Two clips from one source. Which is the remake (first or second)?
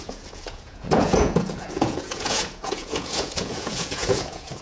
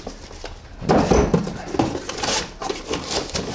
first